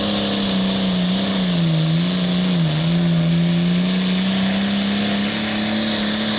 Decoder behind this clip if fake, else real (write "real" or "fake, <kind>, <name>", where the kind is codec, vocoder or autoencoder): real